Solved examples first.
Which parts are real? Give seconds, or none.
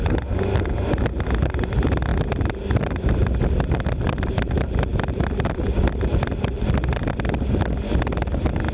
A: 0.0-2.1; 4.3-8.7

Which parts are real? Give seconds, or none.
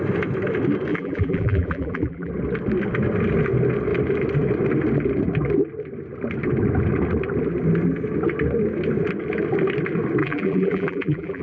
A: 0.0-0.9; 2.3-10.2